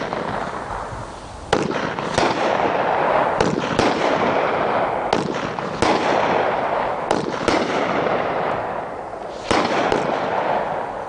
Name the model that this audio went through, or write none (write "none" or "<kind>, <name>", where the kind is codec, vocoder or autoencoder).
none